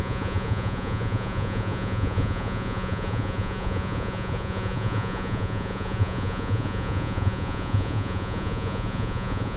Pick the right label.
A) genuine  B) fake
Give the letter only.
B